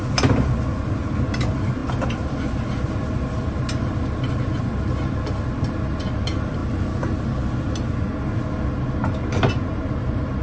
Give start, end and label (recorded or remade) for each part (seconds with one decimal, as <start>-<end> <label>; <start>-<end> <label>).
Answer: 0.0-10.4 recorded